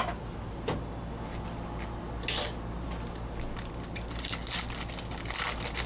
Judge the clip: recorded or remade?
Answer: recorded